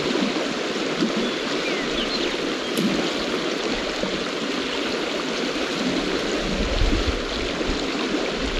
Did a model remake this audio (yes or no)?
no